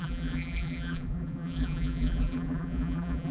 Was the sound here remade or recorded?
remade